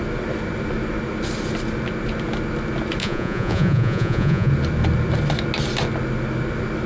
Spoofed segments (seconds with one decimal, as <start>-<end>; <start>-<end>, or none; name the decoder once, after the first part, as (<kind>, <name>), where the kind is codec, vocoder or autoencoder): 3.0-4.5 (vocoder, Vocos)